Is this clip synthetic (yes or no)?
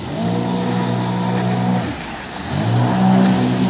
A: no